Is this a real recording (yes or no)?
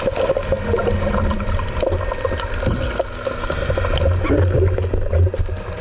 yes